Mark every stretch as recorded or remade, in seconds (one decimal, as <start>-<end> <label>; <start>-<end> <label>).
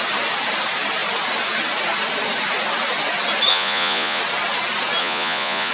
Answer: 0.0-3.5 recorded; 3.5-4.2 remade; 4.2-5.0 recorded; 5.0-5.7 remade